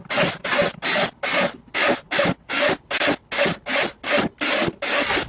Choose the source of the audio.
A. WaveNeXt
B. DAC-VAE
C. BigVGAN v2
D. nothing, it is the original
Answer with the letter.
D